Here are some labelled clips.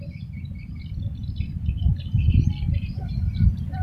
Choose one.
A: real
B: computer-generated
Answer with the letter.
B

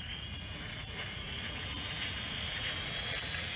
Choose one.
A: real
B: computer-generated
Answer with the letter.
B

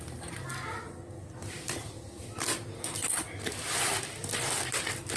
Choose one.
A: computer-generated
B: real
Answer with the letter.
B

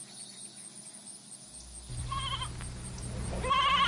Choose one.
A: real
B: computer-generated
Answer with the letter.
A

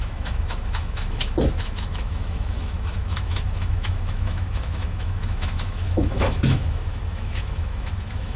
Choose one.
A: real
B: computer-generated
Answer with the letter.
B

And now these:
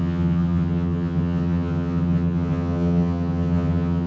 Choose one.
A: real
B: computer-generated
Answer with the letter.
B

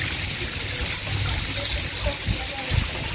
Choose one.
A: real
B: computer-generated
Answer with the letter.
A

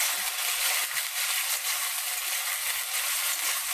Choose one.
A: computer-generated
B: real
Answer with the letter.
B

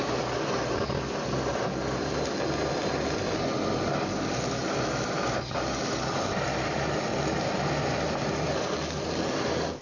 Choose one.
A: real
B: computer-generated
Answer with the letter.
A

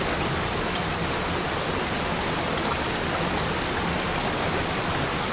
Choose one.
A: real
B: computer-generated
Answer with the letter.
A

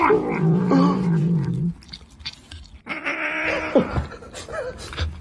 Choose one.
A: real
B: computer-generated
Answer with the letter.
A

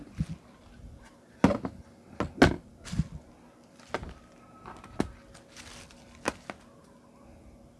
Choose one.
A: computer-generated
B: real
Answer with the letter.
B